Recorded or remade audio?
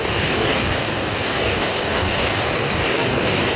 remade